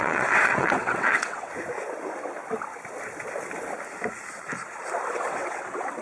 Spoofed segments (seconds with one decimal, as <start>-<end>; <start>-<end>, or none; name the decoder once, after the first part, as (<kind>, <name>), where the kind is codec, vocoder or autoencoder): 0.0-1.5 (vocoder, WaveNeXt); 5.1-6.0